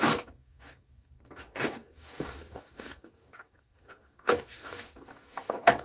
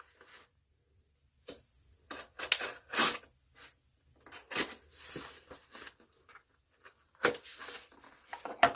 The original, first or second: second